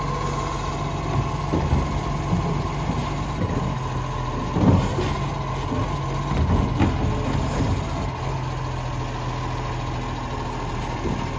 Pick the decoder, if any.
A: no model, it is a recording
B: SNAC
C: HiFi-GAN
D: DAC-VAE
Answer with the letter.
A